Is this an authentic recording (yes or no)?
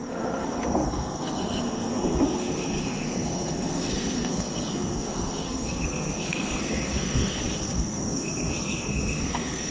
no